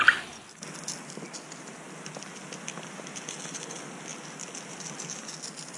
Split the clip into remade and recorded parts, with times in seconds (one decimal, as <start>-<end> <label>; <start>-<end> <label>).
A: 0.0-5.8 recorded